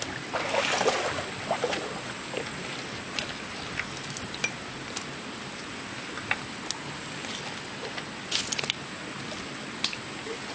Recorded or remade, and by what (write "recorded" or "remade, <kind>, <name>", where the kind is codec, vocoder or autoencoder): recorded